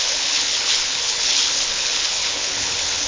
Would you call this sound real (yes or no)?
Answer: no